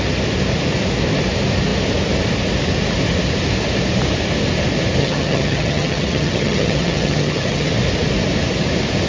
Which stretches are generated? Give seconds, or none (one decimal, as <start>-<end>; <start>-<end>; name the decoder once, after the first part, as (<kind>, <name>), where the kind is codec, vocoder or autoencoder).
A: 5.0-7.7 (vocoder, HiFi-GAN)